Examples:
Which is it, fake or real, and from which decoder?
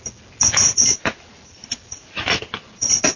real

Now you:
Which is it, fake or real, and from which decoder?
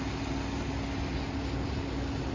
real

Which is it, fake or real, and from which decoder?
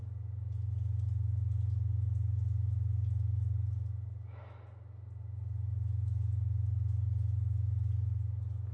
real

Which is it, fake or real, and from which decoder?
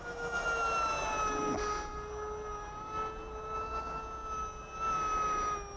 real